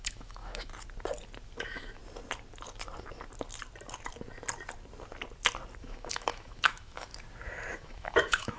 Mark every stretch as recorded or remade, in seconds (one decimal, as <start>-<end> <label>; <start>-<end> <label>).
0.0-0.7 remade; 0.7-1.6 recorded; 1.6-2.0 remade; 2.0-5.8 recorded; 5.8-7.1 remade; 7.1-7.7 recorded; 7.7-8.6 remade